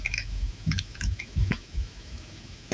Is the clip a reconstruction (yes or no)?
yes